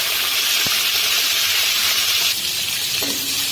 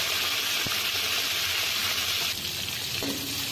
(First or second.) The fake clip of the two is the first